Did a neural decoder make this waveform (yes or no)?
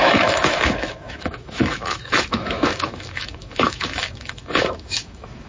yes